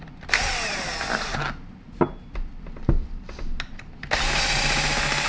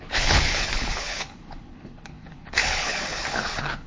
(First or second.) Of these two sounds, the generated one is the second